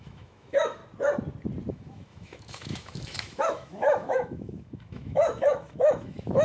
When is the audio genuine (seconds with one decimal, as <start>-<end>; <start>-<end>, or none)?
0.8-1.7